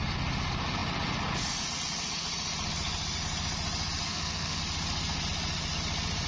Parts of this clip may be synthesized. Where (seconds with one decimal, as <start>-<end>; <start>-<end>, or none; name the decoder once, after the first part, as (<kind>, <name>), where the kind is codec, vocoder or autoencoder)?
4.1-4.6 (codec, SNAC)